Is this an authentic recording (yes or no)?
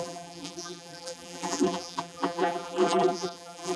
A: no